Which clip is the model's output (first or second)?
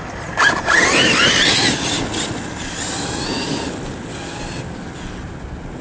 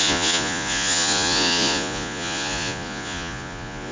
second